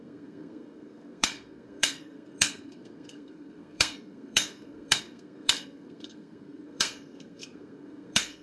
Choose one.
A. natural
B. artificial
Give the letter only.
B